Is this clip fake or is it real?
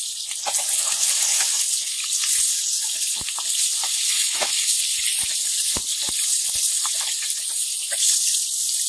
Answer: real